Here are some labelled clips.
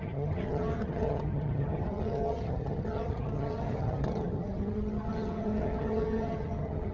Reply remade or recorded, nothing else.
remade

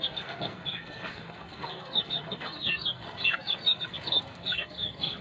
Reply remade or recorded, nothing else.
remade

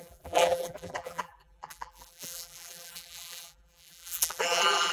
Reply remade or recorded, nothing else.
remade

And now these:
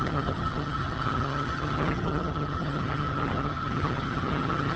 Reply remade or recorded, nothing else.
remade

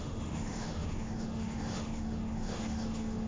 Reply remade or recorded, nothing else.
remade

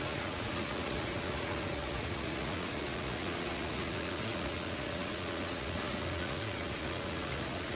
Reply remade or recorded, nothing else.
remade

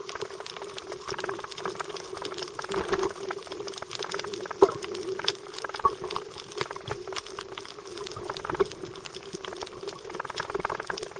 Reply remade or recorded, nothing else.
remade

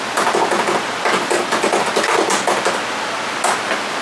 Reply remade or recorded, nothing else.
recorded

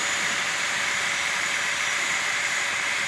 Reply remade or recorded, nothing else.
remade